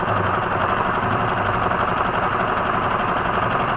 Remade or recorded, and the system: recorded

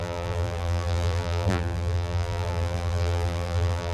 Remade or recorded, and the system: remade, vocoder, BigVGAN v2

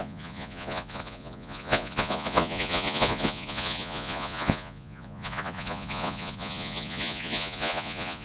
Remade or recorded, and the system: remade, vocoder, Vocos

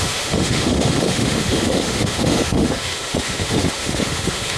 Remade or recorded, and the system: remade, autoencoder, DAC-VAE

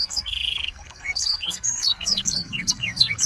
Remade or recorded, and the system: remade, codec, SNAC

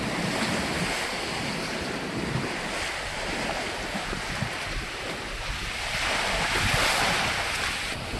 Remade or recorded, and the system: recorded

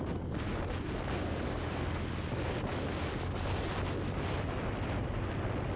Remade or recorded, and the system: recorded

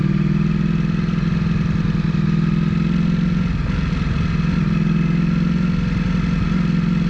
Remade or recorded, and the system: recorded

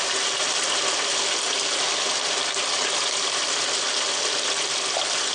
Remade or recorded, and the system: recorded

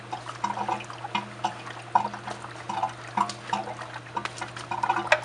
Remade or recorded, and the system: recorded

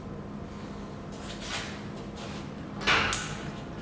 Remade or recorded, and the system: recorded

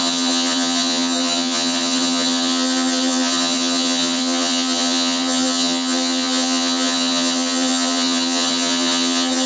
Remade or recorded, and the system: remade, vocoder, HiFi-GAN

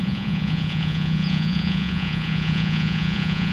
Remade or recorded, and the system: remade, vocoder, Vocos